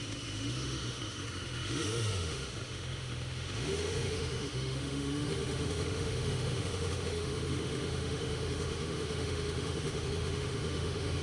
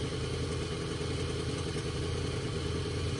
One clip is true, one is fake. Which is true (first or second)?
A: second